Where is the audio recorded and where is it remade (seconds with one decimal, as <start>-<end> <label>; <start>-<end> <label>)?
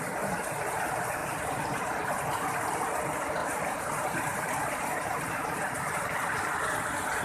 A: 0.0-1.2 recorded; 1.2-1.8 remade; 1.8-3.4 recorded; 3.4-5.8 remade; 5.8-7.2 recorded